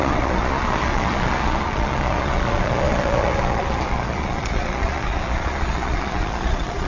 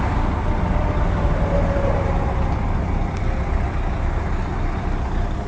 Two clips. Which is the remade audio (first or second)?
first